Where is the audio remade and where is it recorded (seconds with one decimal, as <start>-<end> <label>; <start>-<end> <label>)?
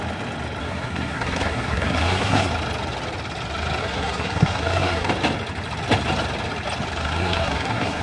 0.0-0.6 recorded; 0.6-2.5 remade; 2.5-3.8 recorded; 3.8-5.1 remade; 5.1-7.0 recorded; 7.0-8.0 remade